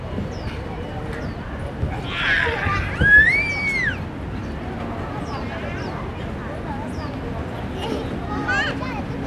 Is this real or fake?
real